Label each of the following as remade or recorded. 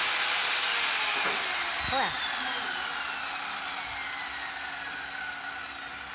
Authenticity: recorded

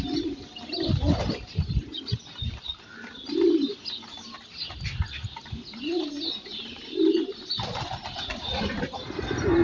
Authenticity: recorded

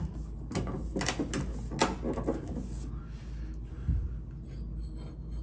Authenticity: recorded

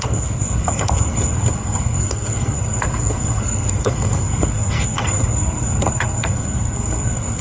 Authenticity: remade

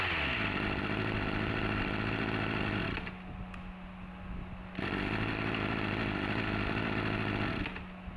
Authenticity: recorded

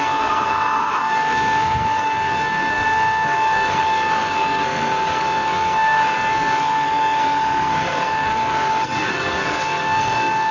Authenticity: remade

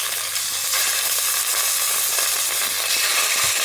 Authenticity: recorded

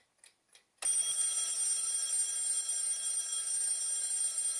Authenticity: recorded